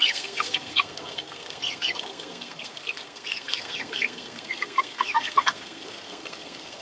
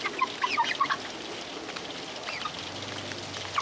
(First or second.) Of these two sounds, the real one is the second